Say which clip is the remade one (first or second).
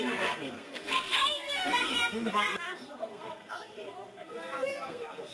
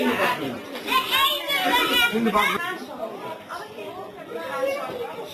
first